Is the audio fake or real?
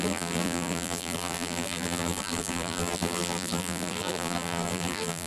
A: fake